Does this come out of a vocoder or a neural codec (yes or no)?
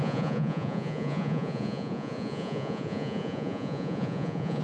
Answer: yes